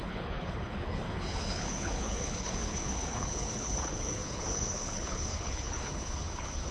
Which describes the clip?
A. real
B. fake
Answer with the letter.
B